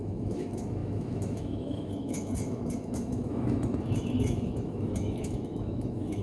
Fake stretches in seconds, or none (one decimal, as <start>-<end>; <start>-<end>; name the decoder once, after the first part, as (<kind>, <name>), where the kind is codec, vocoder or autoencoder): 0.0-6.2 (autoencoder, DAC-VAE)